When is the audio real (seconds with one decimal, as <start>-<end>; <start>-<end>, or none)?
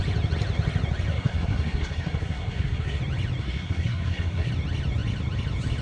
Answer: 0.0-1.1; 3.0-3.4; 4.5-5.8